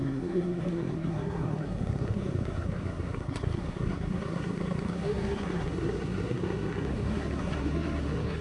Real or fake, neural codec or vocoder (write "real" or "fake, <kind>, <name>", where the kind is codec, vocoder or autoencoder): fake, codec, SNAC